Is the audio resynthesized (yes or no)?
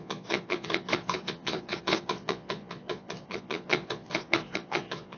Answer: yes